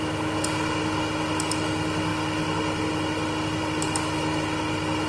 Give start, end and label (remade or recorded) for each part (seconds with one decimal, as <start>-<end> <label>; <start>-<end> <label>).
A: 0.0-5.1 recorded